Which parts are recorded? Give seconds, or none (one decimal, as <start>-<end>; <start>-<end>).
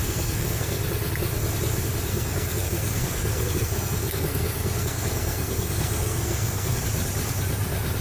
0.8-2.1; 6.8-8.0